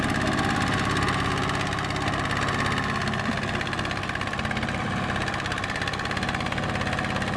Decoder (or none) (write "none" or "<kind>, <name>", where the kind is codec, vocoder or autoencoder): none